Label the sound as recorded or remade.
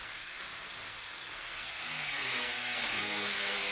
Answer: remade